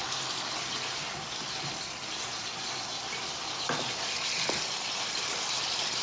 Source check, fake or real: fake